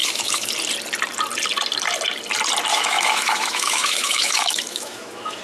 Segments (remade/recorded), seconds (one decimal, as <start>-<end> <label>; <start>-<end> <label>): 0.0-0.5 remade; 0.5-2.7 recorded; 2.7-5.4 remade